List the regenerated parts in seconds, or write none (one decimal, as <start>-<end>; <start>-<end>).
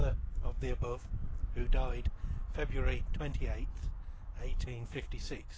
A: 0.0-1.2; 4.5-5.1